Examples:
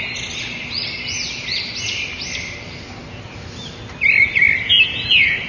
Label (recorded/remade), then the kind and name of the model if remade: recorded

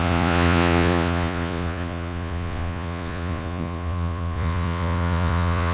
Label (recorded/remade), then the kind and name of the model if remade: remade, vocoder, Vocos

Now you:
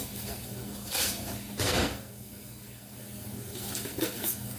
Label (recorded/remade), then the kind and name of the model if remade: remade, codec, SNAC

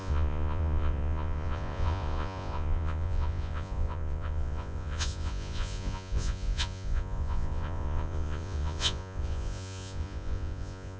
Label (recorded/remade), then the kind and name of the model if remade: remade, vocoder, Vocos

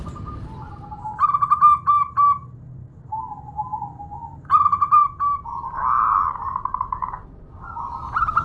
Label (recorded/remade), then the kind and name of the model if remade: recorded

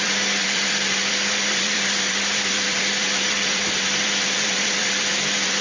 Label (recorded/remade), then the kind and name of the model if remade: remade, vocoder, BigVGAN v2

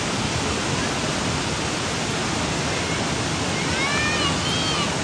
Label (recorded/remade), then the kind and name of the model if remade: recorded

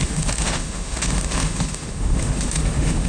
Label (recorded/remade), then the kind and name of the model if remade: remade, autoencoder, DAC-VAE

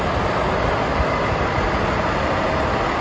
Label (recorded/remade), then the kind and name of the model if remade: recorded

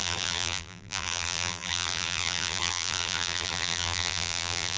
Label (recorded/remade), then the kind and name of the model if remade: remade, vocoder, BigVGAN v2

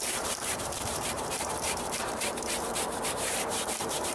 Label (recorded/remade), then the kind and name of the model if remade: remade, vocoder, BigVGAN v2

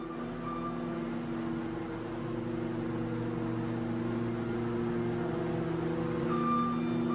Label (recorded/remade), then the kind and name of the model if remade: recorded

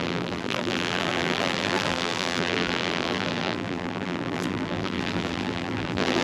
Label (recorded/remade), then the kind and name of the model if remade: remade, vocoder, BigVGAN v2